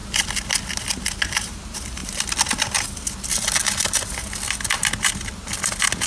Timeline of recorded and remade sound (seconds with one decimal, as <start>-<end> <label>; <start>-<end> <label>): 0.0-6.1 recorded